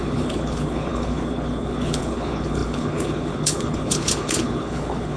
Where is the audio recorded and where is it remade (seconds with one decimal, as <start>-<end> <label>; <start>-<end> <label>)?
0.0-5.2 remade